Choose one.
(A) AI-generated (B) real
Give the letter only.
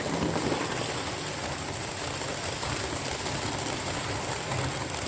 B